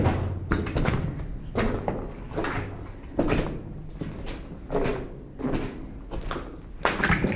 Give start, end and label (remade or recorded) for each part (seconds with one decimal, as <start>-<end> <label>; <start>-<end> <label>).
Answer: 0.0-7.4 recorded